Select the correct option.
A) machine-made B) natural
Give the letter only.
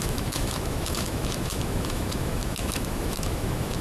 A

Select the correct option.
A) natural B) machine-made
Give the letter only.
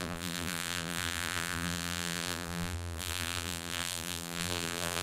B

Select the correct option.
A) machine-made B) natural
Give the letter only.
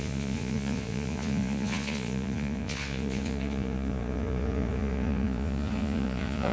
A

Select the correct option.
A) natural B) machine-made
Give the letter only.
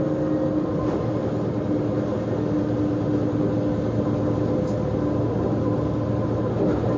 A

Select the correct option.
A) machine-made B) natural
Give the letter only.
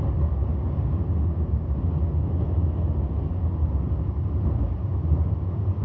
B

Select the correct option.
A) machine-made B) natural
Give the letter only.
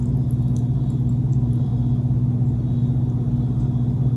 B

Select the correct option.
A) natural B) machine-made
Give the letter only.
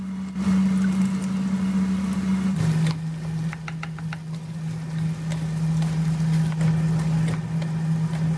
A